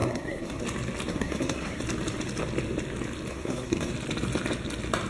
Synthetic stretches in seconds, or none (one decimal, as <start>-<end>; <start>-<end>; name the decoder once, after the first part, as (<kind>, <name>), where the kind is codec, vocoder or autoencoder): 0.0-0.6 (codec, SNAC); 1.1-1.8; 3.3-3.9

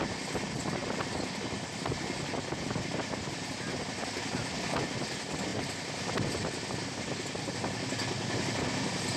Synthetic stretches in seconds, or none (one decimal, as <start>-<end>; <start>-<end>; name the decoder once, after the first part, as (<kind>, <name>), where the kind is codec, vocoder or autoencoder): none

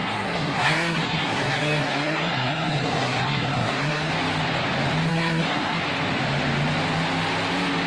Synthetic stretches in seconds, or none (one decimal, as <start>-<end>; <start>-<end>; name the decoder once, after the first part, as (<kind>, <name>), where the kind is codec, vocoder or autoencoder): 0.0-4.1 (codec, SNAC); 5.1-5.8

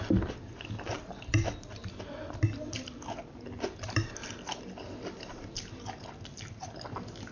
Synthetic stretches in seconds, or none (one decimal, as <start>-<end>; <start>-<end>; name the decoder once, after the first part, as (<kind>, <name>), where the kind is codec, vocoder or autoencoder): none

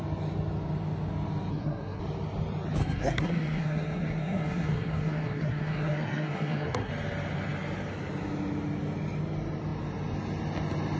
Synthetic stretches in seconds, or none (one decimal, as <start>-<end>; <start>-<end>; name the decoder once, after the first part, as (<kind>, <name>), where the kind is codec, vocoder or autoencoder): 1.5-2.0 (codec, SNAC); 2.8-6.9

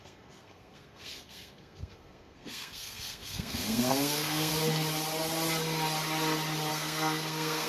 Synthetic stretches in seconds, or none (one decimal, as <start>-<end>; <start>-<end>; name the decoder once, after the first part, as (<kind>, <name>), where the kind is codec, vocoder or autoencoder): 0.0-4.5 (codec, SNAC); 6.7-7.7

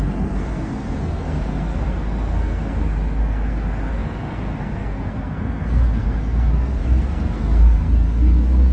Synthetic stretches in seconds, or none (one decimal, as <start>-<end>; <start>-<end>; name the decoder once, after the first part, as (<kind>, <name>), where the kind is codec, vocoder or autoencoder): 0.0-8.7 (codec, SNAC)

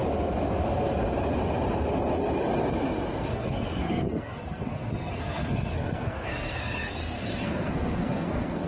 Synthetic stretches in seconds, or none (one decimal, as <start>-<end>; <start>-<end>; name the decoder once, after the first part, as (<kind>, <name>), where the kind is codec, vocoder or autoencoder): 3.2-8.7 (codec, SNAC)